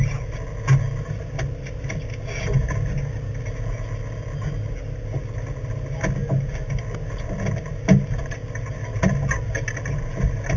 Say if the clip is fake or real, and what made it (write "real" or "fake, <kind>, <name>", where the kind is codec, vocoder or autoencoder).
real